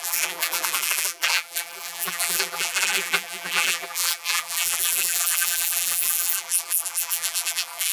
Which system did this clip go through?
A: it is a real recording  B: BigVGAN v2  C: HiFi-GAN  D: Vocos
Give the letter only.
B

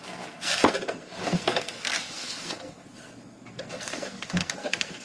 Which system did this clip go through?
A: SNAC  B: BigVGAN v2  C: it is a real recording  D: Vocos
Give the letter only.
A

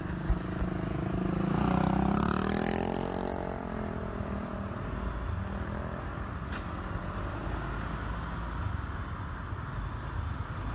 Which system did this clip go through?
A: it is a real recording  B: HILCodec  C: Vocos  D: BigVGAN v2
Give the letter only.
A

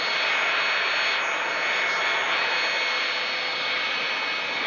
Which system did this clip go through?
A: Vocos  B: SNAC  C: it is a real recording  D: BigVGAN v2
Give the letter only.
C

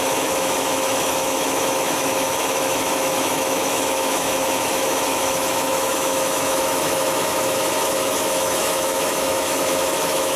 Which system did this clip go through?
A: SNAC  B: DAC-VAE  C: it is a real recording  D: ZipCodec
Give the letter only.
B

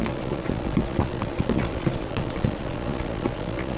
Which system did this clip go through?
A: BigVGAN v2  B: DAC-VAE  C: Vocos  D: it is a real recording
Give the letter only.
C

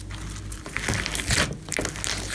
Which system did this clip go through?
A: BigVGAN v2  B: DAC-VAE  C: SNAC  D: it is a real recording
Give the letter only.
D